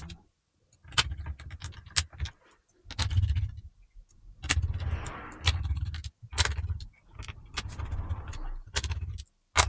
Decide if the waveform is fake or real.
real